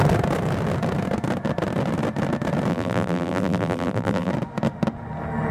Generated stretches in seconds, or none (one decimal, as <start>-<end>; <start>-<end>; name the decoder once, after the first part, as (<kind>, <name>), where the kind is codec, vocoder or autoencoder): 2.7-4.3 (vocoder, BigVGAN v2)